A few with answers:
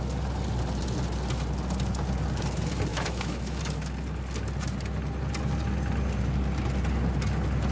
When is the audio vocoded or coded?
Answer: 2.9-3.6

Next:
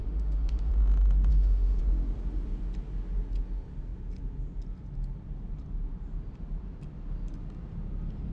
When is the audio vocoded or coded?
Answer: 0.0-0.7; 1.3-1.8

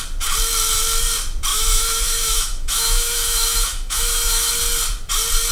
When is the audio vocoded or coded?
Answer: 1.5-4.5